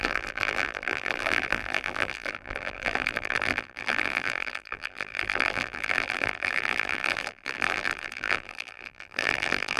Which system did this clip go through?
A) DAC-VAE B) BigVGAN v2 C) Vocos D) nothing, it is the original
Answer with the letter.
B